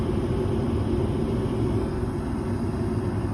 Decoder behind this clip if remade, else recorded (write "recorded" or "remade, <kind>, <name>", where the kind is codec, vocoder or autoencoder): recorded